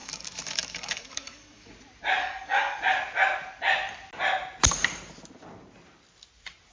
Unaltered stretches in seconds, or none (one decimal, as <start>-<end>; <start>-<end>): 1.7-2.2; 2.8-6.7